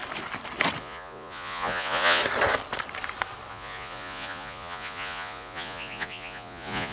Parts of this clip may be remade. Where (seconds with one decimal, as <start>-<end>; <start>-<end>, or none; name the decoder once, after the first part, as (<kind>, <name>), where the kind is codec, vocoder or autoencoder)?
0.8-2.2 (vocoder, Vocos); 3.5-6.9